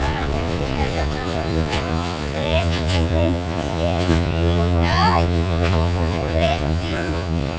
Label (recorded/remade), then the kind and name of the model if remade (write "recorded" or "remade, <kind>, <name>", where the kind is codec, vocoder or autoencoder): remade, vocoder, Vocos